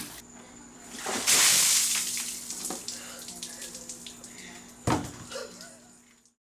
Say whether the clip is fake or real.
real